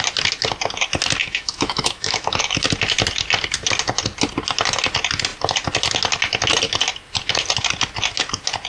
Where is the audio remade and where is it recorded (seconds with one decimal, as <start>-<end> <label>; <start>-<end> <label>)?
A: 0.0-1.2 recorded; 1.2-2.7 remade; 2.7-8.7 recorded